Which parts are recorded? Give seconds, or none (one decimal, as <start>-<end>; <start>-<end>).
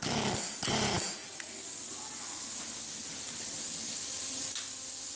0.0-5.2